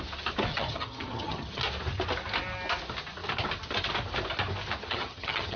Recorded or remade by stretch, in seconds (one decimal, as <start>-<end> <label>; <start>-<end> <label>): 0.0-0.5 recorded; 0.5-1.6 remade; 1.6-4.8 recorded; 4.8-5.6 remade